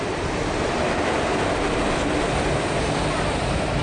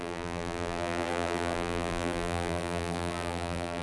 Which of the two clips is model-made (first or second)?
second